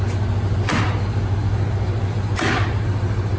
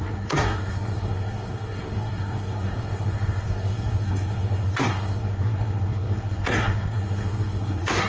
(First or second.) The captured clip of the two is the first